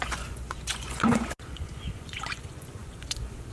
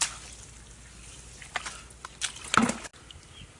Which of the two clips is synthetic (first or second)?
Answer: first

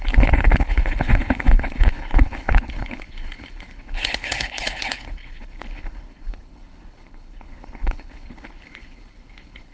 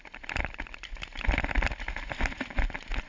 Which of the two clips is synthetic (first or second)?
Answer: first